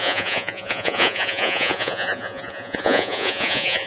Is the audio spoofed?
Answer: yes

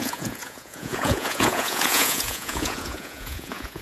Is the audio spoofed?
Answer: yes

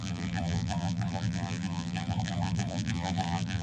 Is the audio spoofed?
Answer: yes